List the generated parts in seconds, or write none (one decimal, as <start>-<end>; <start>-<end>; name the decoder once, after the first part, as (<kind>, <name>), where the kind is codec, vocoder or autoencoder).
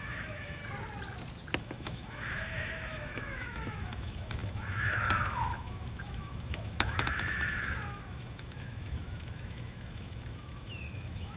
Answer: 0.0-0.6 (autoencoder, DAC-VAE); 1.6-11.4